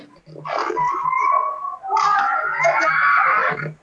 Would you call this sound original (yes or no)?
yes